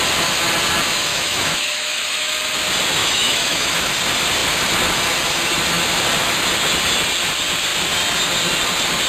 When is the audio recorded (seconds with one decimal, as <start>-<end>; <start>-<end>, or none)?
0.0-1.1; 2.3-3.0; 3.9-9.1